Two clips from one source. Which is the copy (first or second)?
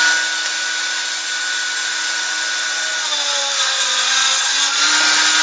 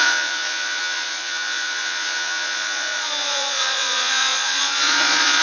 second